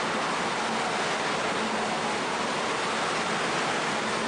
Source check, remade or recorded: recorded